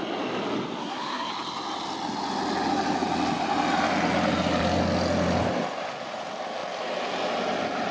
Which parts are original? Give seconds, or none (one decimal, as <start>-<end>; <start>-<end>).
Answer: 0.0-0.8; 1.3-7.9

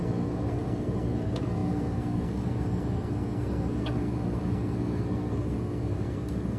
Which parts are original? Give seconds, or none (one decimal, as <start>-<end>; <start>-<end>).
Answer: none

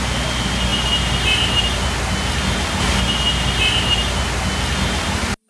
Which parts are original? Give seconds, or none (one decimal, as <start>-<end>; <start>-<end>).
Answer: 0.0-5.5

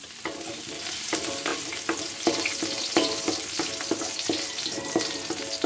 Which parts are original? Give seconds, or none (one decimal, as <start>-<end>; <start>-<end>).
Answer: 0.0-5.7

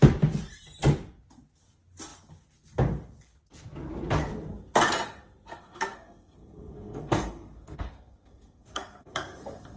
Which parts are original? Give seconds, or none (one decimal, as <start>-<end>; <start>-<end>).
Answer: 0.0-5.5

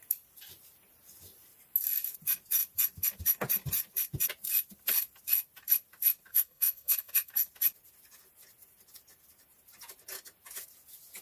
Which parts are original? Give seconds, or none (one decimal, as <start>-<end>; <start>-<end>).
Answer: 0.0-6.3; 7.3-11.2

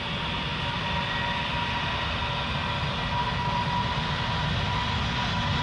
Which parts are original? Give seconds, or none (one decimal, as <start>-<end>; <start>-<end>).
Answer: 0.0-5.6

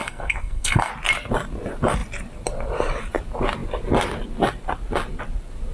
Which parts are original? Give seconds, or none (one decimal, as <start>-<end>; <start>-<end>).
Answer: 0.9-5.7